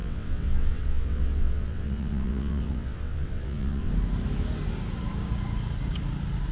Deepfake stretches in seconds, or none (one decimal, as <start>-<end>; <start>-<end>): 0.0-3.9